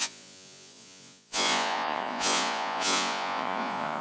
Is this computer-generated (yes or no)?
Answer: yes